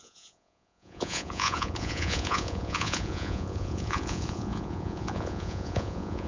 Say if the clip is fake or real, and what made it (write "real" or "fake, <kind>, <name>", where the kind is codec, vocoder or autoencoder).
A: fake, vocoder, Vocos